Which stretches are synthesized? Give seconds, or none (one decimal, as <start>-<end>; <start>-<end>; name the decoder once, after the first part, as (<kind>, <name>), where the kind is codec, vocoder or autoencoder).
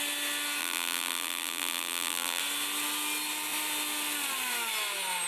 0.6-2.4 (vocoder, BigVGAN v2)